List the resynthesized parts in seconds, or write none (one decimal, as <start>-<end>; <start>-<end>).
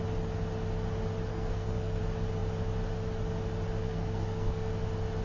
1.3-2.0; 3.8-4.7